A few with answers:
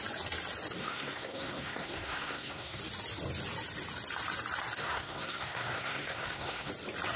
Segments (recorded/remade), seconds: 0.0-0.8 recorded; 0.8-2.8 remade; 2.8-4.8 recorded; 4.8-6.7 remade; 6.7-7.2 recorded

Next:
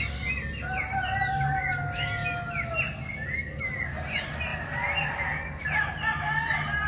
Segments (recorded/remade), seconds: 0.0-4.5 recorded; 4.5-5.6 remade; 5.6-6.9 recorded

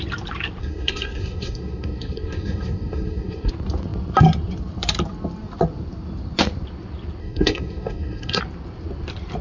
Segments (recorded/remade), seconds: 0.0-0.6 recorded; 0.6-3.5 remade; 3.5-7.2 recorded; 7.2-8.4 remade; 8.4-9.4 recorded

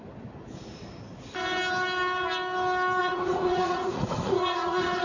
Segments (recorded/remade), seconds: 0.0-3.0 recorded; 3.0-5.0 remade

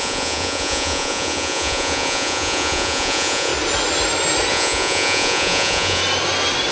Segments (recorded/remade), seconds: 0.0-3.5 remade; 3.5-4.5 recorded; 4.5-6.0 remade; 6.0-6.7 recorded

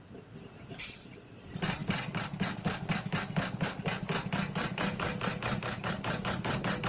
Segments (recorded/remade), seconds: 0.0-6.9 recorded

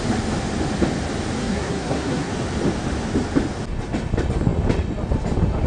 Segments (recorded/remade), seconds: 0.0-1.4 recorded; 1.4-2.3 remade; 2.3-5.7 recorded